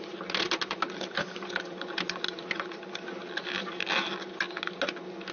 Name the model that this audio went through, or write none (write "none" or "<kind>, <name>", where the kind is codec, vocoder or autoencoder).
none